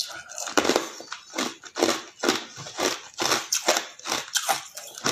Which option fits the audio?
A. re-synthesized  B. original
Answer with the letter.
B